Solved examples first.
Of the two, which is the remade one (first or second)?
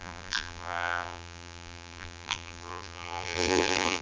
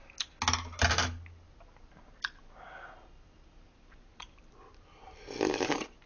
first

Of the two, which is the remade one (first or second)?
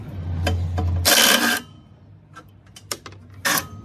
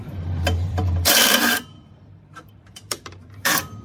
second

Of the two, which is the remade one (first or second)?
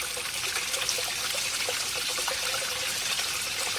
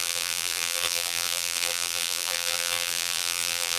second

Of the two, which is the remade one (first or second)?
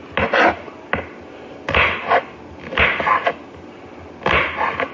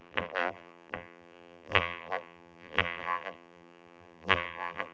second